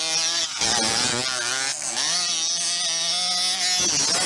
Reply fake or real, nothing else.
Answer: real